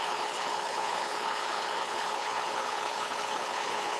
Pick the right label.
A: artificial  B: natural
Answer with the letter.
A